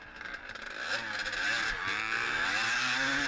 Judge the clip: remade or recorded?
recorded